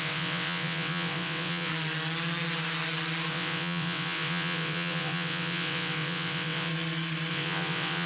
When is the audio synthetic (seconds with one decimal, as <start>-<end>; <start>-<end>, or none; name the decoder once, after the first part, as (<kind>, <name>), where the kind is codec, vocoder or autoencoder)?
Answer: 0.0-1.7 (vocoder, WaveNeXt); 3.3-6.7; 7.3-8.1